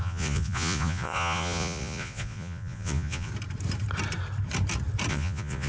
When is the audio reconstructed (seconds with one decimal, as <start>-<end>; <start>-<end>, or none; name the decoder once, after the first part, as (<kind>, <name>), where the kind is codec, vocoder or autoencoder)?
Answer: 0.0-3.3 (vocoder, Vocos); 5.1-5.7